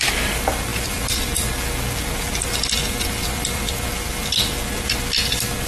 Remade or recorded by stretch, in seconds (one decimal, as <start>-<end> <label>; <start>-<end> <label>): 0.0-0.7 recorded; 0.7-1.5 remade; 1.5-2.8 recorded; 2.8-3.7 remade; 3.7-5.7 recorded